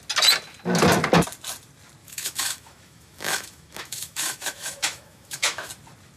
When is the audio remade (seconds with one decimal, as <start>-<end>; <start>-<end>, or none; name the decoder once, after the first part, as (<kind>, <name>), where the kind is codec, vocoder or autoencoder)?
2.0-5.7 (autoencoder, DAC-VAE)